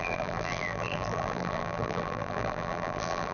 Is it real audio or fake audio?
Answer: fake